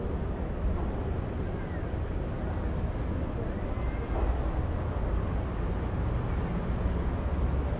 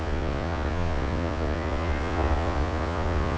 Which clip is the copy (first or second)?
second